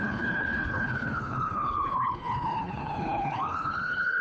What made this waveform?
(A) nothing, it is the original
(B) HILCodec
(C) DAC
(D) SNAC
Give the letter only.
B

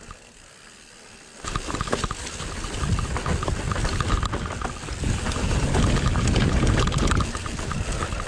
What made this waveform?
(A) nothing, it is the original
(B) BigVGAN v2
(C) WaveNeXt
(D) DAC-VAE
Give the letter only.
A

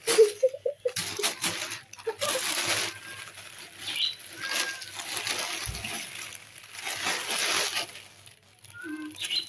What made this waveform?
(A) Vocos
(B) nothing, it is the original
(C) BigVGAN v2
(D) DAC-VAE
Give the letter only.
B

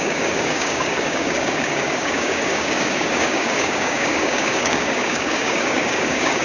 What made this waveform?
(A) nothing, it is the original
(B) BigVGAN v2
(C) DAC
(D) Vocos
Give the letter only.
C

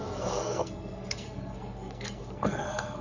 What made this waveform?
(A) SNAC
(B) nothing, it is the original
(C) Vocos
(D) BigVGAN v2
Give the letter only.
A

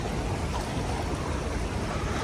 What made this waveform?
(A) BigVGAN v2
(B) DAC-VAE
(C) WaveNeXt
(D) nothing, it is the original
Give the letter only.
D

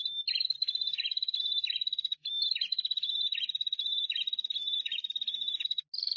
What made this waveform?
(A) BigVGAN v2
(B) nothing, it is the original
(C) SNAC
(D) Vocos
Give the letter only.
B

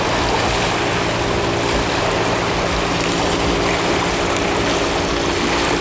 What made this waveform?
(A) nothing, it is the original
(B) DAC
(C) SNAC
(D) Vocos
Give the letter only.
A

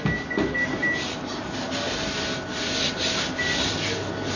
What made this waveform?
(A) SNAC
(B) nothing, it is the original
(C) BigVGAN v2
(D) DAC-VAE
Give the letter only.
B